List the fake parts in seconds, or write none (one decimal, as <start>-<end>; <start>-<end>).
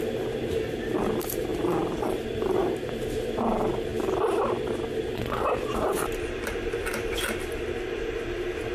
none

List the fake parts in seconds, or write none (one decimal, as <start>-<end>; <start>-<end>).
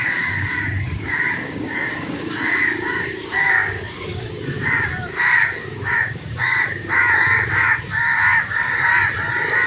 0.0-8.9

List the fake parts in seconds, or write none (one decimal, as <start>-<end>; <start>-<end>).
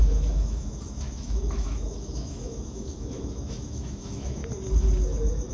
0.0-4.4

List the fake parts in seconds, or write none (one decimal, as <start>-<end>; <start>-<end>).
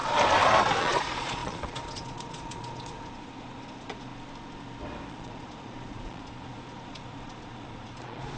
0.8-4.1; 5.1-8.4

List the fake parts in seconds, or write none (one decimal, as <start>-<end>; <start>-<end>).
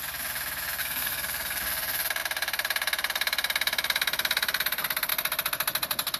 0.8-1.6